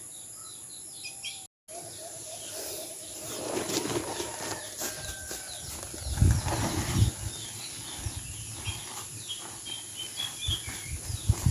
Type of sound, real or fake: real